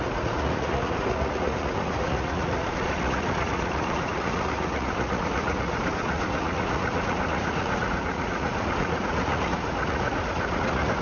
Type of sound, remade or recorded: remade